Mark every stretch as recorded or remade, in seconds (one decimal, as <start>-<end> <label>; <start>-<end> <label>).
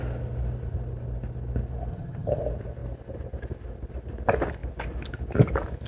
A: 0.0-1.9 recorded; 1.9-2.4 remade; 2.4-5.9 recorded